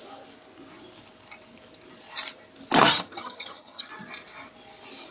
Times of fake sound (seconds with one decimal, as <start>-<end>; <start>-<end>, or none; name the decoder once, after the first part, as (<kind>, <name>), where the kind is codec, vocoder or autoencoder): 2.9-3.9 (vocoder, HiFi-GAN)